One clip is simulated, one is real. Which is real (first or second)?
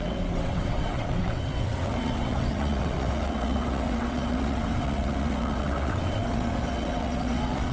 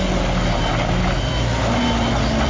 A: second